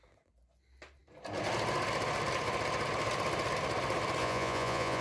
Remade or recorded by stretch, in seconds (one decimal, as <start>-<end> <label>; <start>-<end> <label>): 0.0-4.2 recorded; 4.2-5.0 remade